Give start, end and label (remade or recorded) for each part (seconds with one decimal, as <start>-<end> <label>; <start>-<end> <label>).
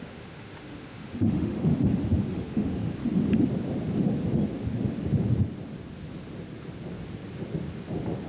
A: 0.0-1.7 remade; 1.7-2.3 recorded; 2.3-3.0 remade; 3.0-8.3 recorded